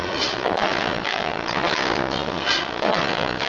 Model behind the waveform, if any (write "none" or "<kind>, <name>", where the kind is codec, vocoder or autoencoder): vocoder, Vocos